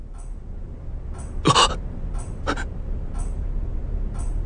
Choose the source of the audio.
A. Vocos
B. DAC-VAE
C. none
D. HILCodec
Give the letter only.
C